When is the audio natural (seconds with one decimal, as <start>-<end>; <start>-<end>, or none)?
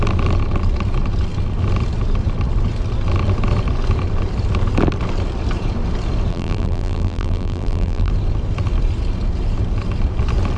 0.0-6.3; 8.1-10.6